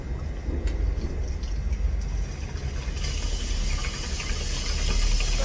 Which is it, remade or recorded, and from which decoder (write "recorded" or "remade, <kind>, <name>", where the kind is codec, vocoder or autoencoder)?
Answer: recorded